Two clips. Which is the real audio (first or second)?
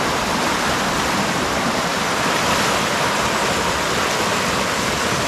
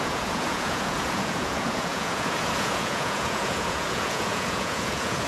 first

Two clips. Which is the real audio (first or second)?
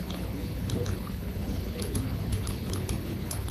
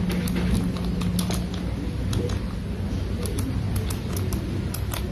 second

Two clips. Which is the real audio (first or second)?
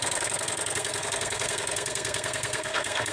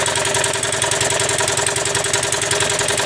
second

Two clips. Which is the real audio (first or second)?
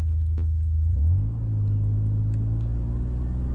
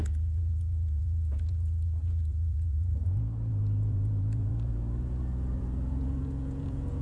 first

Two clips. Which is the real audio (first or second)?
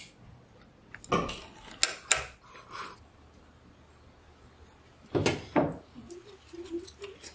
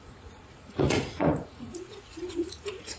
first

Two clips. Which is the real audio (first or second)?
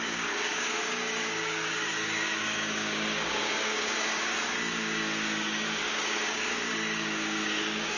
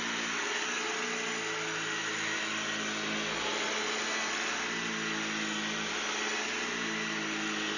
second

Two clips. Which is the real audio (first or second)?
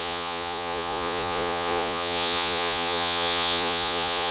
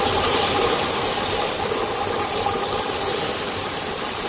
second